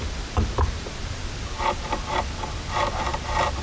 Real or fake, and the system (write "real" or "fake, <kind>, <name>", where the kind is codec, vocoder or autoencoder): real